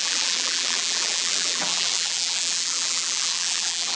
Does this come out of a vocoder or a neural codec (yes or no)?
yes